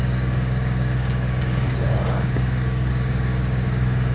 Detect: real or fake fake